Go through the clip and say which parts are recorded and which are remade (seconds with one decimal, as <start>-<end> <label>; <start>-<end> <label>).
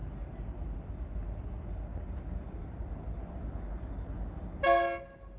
0.0-5.4 recorded